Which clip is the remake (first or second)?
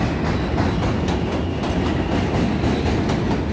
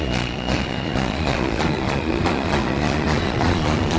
second